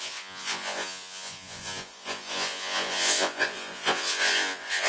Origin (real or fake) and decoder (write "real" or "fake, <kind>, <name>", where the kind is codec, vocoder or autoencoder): fake, vocoder, Vocos